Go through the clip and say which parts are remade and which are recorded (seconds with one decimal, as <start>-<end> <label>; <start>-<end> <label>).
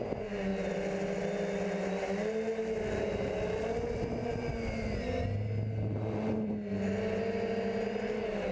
0.0-8.5 recorded